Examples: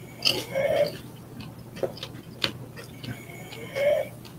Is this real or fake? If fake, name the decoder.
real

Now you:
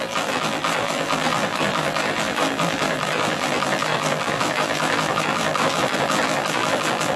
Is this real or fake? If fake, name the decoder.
fake, vocoder, BigVGAN v2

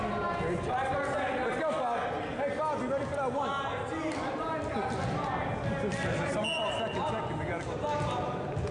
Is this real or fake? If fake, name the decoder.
real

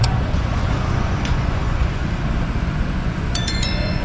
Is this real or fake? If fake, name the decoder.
fake, vocoder, Vocos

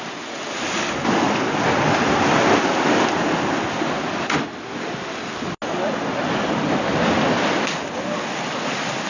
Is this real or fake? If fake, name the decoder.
real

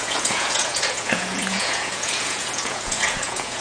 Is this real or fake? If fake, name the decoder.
fake, vocoder, Vocos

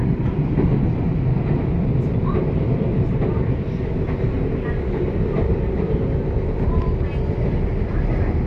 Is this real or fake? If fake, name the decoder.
fake, vocoder, BigVGAN v2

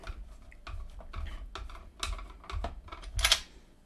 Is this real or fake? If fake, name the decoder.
real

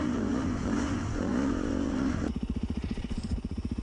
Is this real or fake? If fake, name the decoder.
fake, vocoder, Vocos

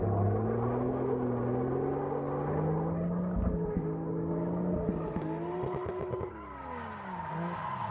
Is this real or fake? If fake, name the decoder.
real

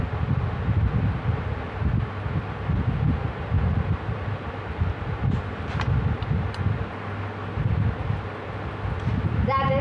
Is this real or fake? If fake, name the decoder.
real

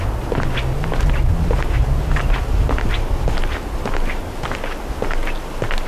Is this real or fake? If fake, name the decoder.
real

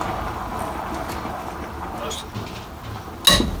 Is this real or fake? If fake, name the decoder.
real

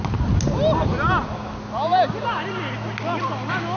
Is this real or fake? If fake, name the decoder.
real